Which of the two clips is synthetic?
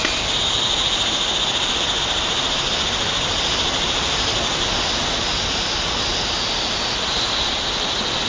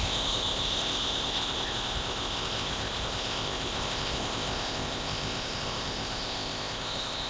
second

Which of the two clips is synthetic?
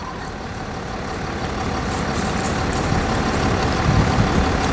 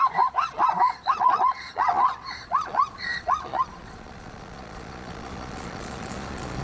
second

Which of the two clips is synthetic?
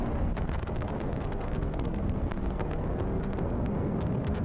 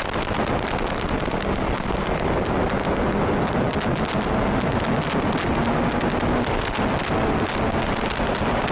first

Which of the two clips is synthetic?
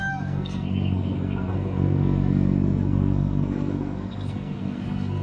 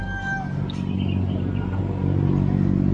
first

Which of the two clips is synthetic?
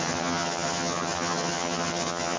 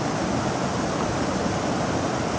first